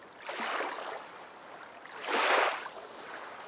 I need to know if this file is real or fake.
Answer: real